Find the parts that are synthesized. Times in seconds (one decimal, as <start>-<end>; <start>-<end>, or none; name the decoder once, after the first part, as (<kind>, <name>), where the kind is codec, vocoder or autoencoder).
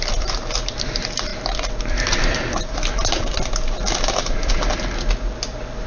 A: 0.0-5.9 (vocoder, BigVGAN v2)